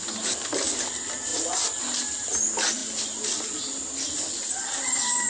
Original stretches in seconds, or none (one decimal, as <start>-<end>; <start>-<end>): 0.0-5.3